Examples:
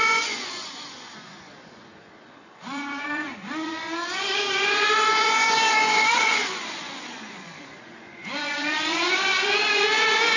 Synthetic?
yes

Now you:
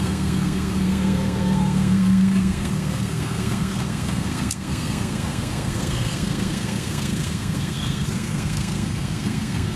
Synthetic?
yes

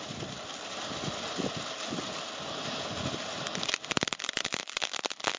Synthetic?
no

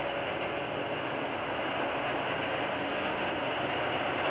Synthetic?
no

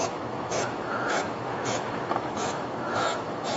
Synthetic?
yes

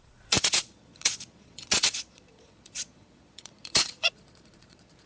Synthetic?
yes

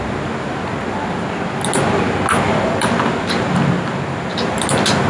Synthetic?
no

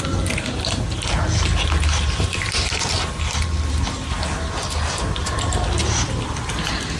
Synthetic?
no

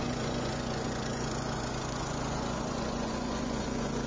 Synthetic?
yes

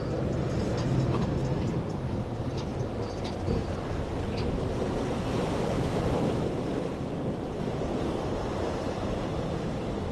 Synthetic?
no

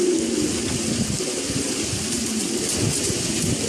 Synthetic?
no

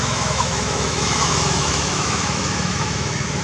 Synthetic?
yes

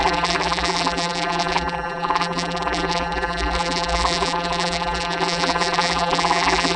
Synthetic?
yes